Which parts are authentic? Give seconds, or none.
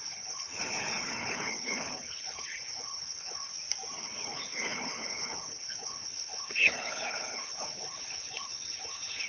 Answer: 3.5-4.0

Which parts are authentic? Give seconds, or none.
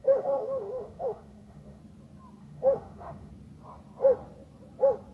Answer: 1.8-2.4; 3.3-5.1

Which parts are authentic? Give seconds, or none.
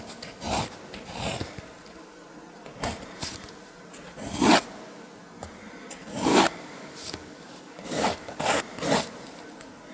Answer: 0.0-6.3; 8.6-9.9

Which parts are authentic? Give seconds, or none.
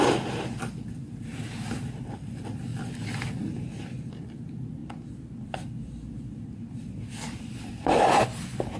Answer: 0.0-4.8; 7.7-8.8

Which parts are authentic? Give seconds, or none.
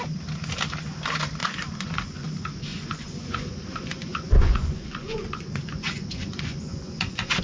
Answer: 0.0-1.4; 2.3-2.7